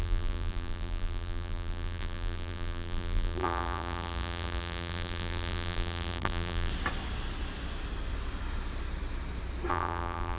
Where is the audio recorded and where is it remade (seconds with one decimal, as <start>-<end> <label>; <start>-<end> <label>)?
0.0-6.7 remade; 6.7-9.7 recorded; 9.7-10.4 remade